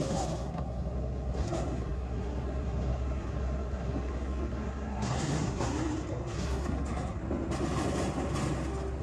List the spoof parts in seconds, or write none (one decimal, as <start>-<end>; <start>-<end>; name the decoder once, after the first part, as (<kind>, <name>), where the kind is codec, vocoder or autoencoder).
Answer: 0.0-7.2 (codec, SNAC)